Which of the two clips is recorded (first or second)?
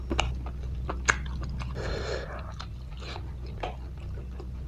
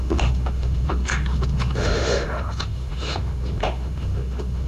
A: first